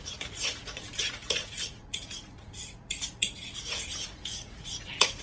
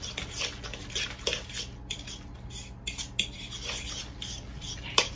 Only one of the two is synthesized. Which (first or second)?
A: first